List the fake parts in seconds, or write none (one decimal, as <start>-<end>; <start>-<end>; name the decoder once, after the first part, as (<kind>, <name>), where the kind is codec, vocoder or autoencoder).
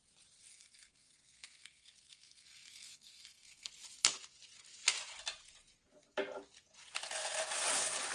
0.5-3.7 (codec, SNAC)